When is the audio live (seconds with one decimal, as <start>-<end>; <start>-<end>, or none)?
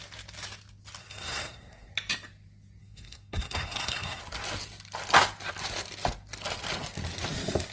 0.0-1.0; 1.9-2.8; 4.2-7.7